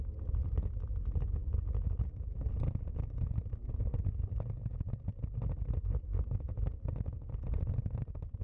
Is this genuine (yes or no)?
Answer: yes